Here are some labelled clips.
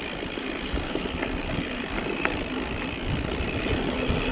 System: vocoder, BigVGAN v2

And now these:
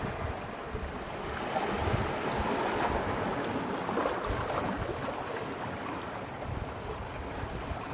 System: none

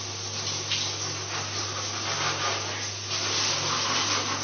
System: none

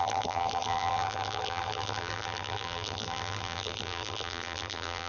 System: vocoder, BigVGAN v2